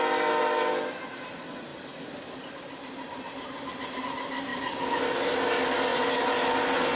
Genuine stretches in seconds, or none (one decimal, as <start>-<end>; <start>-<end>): 0.0-7.0